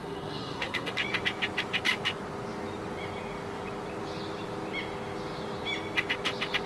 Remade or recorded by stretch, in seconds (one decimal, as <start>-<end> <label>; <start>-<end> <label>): 0.0-0.9 remade; 0.9-6.7 recorded